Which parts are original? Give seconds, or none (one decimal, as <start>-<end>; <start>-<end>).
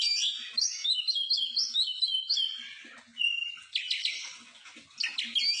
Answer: 0.0-5.6